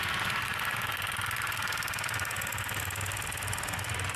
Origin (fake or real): real